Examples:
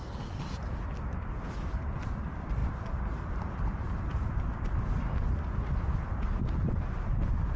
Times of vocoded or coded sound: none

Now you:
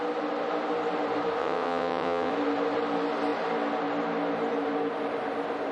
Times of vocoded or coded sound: 1.4-2.3 (vocoder, WaveNeXt)